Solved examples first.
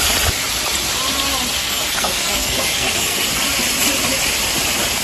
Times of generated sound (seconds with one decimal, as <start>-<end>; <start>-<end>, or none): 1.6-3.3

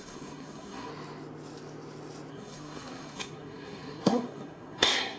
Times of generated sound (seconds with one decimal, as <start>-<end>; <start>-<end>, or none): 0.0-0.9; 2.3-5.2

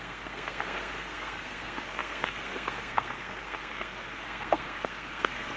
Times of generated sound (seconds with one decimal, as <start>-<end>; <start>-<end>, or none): 0.0-5.6

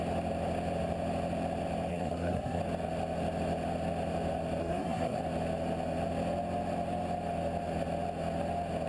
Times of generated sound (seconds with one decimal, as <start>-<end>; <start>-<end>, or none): 1.9-2.6; 4.6-5.2

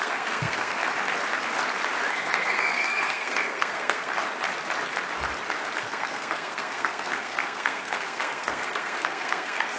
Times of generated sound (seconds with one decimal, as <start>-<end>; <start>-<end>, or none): 0.0-0.8; 2.1-4.1; 5.8-9.8

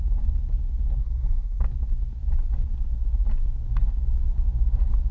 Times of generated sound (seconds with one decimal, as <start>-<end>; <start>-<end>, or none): 1.0-1.6